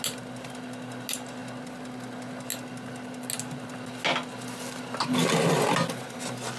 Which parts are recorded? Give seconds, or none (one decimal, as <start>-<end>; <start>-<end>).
0.0-6.6